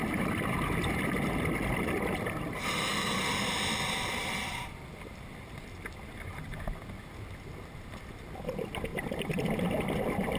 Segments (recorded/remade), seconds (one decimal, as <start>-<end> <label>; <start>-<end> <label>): 0.0-10.4 recorded